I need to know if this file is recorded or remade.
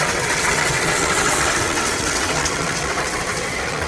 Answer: remade